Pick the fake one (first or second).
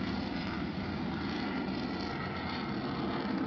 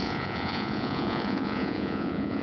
second